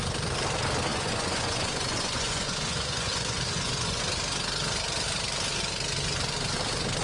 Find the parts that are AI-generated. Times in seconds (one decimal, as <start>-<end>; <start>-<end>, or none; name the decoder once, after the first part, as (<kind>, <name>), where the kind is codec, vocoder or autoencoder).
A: 0.9-4.0 (vocoder, Vocos)